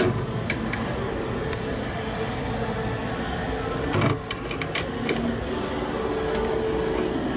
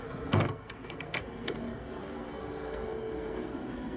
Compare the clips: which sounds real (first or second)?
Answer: first